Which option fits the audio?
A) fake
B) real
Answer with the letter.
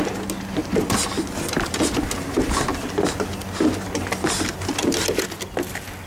B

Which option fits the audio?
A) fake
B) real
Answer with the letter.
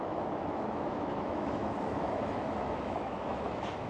A